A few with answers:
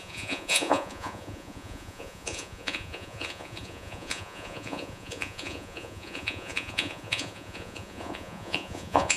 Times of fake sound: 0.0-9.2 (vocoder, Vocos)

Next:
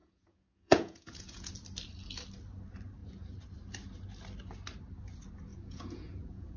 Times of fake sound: 0.0-1.5 (vocoder, Vocos); 5.5-6.6

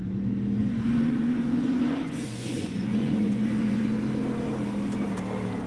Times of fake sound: 0.6-4.0 (vocoder, Vocos)

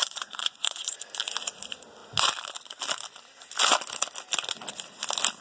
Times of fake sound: 0.0-1.0 (vocoder, Vocos)

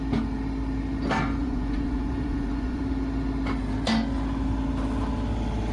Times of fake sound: 1.4-2.8 (vocoder, Vocos)

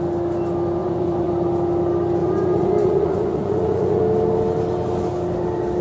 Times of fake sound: 0.8-1.3 (vocoder, Vocos); 2.2-4.0